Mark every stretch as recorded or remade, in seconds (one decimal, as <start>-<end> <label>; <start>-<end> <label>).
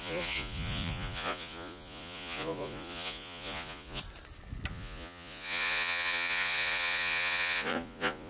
0.0-4.0 remade; 4.0-4.7 recorded; 4.7-8.3 remade